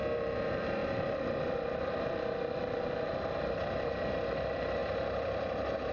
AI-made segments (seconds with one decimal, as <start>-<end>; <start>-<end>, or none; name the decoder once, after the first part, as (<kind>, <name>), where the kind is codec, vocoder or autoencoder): 0.0-0.8 (vocoder, BigVGAN v2); 4.3-5.9